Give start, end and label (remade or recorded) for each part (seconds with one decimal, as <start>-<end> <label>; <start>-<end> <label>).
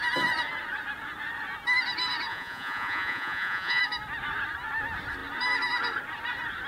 0.0-2.3 recorded; 2.3-3.8 remade; 3.8-6.7 recorded